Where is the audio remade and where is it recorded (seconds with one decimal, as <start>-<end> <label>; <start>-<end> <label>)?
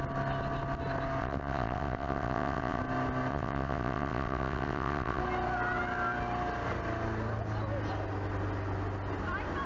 0.0-1.2 recorded; 1.2-2.8 remade; 2.8-3.3 recorded; 3.3-5.2 remade; 5.2-9.7 recorded